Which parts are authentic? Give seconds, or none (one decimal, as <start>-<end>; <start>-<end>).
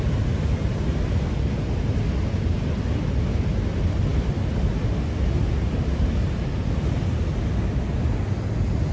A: 0.0-8.9